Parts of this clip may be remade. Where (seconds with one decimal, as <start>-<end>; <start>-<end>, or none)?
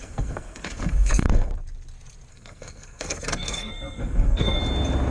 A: 0.0-1.5; 2.3-4.6